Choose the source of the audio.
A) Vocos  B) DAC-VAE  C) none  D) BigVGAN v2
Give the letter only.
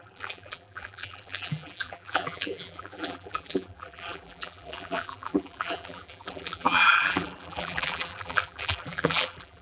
D